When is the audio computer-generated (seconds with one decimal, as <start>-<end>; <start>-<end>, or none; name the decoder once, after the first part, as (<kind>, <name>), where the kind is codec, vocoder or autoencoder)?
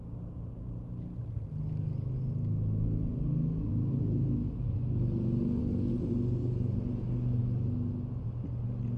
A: none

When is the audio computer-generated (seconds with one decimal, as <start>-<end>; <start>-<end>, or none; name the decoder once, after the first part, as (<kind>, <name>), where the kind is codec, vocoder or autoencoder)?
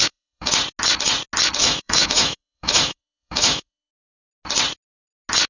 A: 0.0-0.5 (autoencoder, DAC-VAE); 1.6-3.9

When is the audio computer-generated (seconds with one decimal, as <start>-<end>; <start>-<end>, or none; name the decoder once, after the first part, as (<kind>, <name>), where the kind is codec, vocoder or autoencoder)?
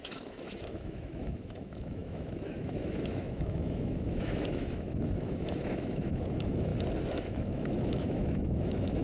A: 0.0-6.7 (autoencoder, DAC-VAE); 7.3-9.0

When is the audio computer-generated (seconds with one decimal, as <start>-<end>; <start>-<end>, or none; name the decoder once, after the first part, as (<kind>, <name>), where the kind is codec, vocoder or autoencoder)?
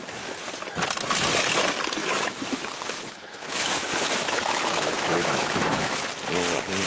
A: 2.0-6.1 (autoencoder, DAC-VAE)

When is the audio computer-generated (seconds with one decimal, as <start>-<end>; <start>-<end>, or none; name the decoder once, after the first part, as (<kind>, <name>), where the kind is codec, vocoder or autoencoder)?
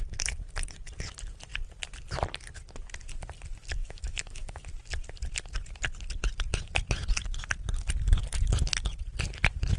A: 3.8-4.6 (autoencoder, DAC-VAE)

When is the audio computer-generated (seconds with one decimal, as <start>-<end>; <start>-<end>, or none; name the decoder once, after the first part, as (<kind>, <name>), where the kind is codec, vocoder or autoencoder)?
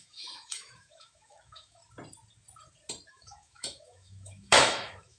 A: 0.0-1.8 (autoencoder, DAC-VAE); 3.1-5.2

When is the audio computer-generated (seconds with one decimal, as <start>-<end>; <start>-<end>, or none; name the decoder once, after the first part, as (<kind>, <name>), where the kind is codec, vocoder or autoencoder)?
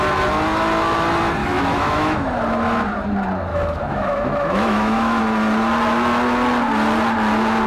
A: 1.4-2.2 (autoencoder, DAC-VAE); 3.5-5.2